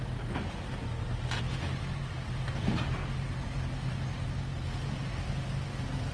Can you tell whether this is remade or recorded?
recorded